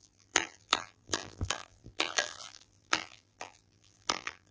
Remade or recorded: remade